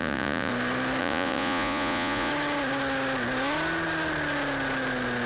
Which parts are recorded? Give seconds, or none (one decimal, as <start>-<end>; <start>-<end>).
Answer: 0.5-1.0; 2.3-5.3